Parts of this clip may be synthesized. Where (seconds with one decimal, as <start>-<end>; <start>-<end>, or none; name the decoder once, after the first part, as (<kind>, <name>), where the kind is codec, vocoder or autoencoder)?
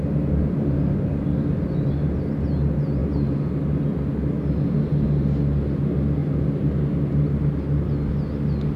6.2-6.7 (vocoder, BigVGAN v2)